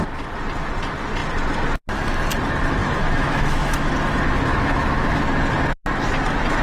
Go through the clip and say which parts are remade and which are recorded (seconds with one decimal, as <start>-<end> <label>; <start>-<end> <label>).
0.0-2.8 recorded; 2.8-3.9 remade; 3.9-4.5 recorded; 4.5-5.2 remade; 5.2-6.6 recorded